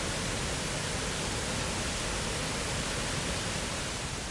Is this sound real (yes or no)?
yes